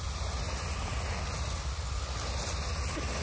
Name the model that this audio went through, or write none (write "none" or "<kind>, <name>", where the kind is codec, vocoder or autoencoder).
none